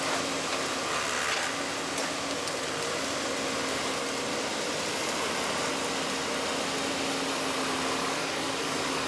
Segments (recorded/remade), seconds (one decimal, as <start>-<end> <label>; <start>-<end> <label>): 0.0-8.0 recorded; 8.0-9.1 remade